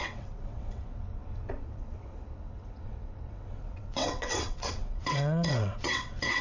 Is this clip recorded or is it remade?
remade